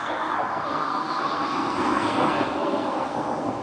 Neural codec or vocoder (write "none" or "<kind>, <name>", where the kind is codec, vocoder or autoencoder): codec, SNAC